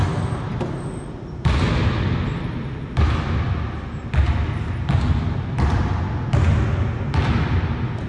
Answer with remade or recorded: recorded